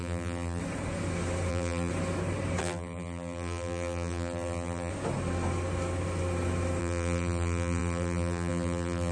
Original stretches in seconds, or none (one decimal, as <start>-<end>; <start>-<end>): 0.6-1.5; 1.9-2.6; 4.9-6.8